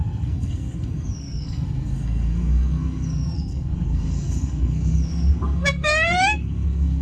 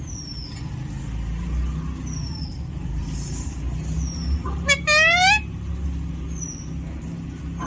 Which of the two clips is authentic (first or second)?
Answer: second